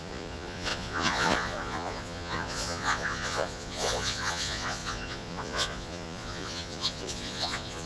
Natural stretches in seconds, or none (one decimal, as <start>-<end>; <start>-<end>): none